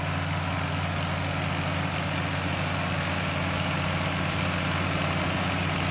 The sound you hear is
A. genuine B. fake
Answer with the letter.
A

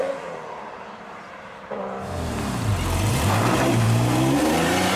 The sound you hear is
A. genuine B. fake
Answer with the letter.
B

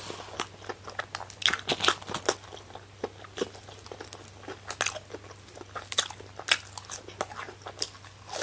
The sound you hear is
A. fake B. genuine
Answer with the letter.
B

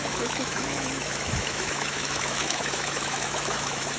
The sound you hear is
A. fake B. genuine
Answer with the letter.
A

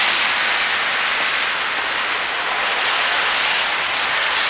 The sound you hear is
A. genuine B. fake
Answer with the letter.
A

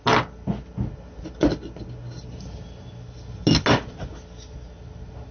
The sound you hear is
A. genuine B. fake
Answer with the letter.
A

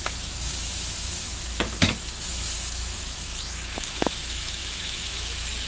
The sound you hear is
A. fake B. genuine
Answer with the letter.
A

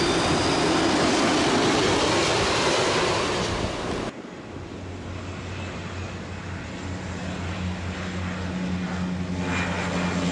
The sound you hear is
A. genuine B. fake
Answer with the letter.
A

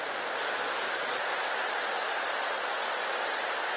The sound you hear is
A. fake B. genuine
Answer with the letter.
B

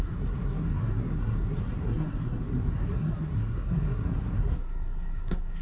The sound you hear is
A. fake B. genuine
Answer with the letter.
A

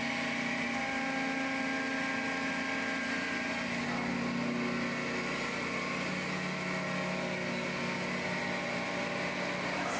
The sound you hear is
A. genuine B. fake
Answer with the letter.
A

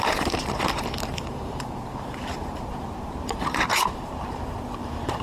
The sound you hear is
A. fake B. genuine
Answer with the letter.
A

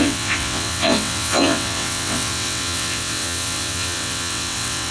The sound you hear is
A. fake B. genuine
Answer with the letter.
A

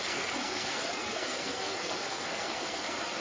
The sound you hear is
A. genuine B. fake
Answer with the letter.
B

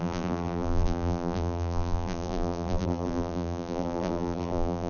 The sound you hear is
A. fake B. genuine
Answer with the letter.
A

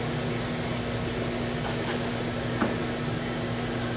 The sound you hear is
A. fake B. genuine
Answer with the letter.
B